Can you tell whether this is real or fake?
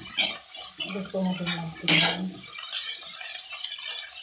real